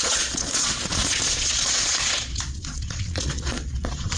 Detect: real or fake fake